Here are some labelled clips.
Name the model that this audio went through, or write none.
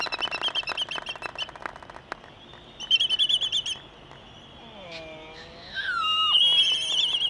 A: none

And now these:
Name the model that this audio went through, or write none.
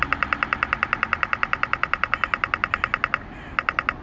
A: none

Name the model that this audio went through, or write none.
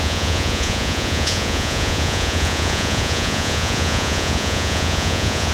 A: vocoder, Vocos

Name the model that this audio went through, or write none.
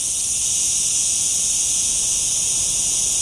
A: none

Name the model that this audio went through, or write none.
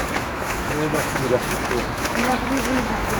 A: autoencoder, DAC-VAE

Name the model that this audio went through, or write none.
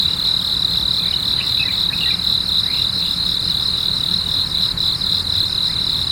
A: none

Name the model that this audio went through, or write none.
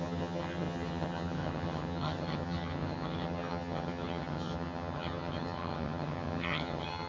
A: vocoder, HiFi-GAN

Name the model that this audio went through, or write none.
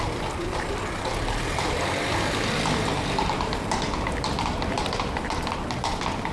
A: vocoder, BigVGAN v2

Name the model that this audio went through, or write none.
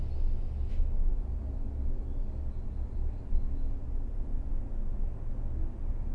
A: none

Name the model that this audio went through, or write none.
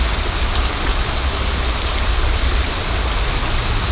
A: none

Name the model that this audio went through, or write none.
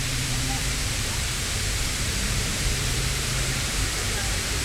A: vocoder, BigVGAN v2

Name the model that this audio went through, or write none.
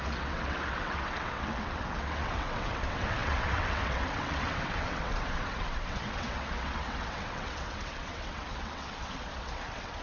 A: vocoder, WaveNeXt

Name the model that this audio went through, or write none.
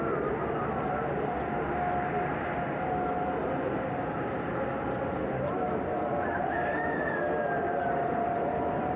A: none